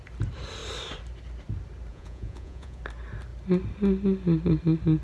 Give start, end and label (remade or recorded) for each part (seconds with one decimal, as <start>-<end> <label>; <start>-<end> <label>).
0.0-1.9 recorded; 1.9-2.8 remade; 2.8-5.0 recorded